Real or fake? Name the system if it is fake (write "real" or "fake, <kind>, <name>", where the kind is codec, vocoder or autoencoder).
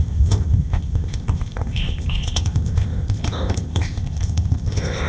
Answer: fake, codec, ZipCodec